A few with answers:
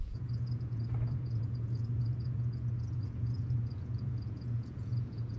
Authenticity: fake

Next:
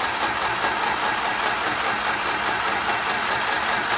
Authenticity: real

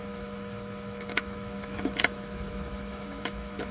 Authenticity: fake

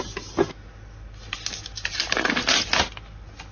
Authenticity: real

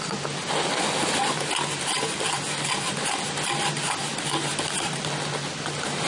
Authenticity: real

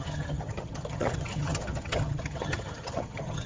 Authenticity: fake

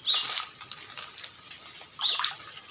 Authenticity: real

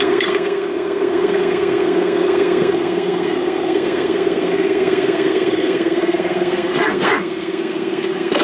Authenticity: fake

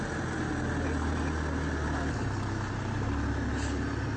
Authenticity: real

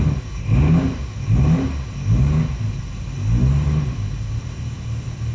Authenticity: real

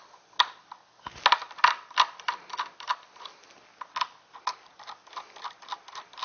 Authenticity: real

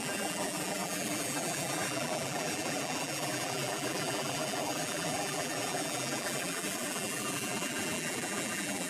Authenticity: fake